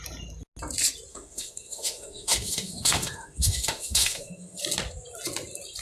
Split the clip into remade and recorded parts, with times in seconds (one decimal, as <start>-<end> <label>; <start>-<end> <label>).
0.0-1.1 recorded; 1.1-4.6 remade; 4.6-5.8 recorded